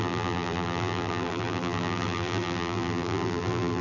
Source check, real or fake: fake